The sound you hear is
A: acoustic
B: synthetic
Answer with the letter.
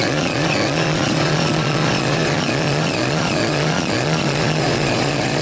B